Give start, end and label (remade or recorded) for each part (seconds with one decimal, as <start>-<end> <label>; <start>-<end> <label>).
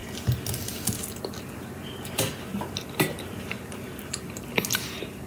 0.0-2.5 recorded; 2.5-4.6 remade; 4.6-5.3 recorded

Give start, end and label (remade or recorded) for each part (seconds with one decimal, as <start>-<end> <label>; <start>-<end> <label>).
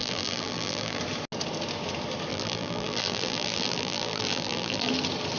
0.0-1.0 remade; 1.0-2.3 recorded; 2.3-4.9 remade; 4.9-5.4 recorded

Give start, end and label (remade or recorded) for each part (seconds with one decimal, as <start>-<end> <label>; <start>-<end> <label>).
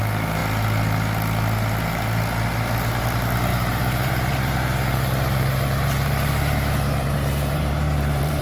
0.0-3.5 recorded; 3.5-8.4 remade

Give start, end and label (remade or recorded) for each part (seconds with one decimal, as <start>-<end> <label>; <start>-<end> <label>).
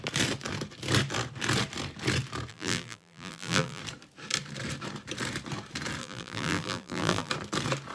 0.0-2.5 recorded; 2.5-3.8 remade; 3.8-6.0 recorded; 6.0-7.3 remade; 7.3-7.9 recorded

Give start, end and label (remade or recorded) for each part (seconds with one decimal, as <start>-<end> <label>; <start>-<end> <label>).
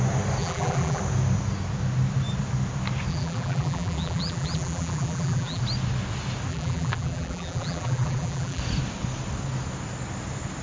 0.0-0.4 recorded; 0.4-1.0 remade; 1.0-3.1 recorded; 3.1-5.6 remade; 5.6-6.5 recorded; 6.5-8.6 remade; 8.6-10.6 recorded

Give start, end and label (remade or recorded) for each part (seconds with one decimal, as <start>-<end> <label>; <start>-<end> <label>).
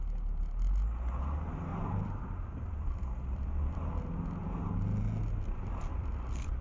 0.0-1.7 recorded; 1.7-3.9 remade; 3.9-5.9 recorded; 5.9-6.6 remade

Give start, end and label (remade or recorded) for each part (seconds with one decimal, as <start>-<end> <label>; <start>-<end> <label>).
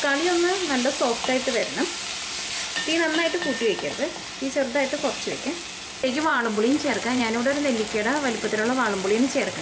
0.0-6.3 recorded; 6.3-7.2 remade; 7.2-9.6 recorded